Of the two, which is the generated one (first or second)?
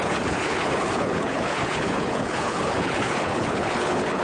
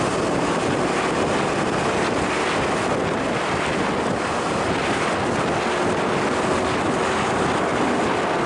first